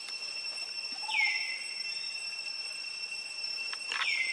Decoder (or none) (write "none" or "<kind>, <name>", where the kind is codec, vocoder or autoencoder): none